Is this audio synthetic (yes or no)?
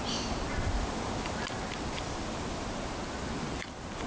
no